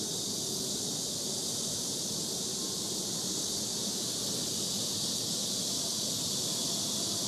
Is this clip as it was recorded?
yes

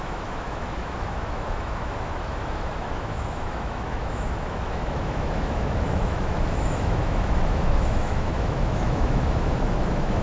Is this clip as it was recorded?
no